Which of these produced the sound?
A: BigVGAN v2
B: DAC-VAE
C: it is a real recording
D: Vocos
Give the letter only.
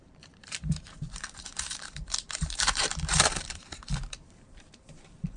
A